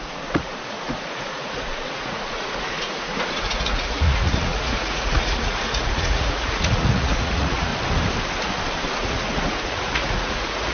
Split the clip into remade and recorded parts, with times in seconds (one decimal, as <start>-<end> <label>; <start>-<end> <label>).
0.0-7.7 remade; 7.7-8.8 recorded; 8.8-10.7 remade